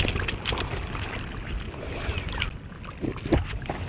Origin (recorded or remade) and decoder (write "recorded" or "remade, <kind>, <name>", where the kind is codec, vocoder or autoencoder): recorded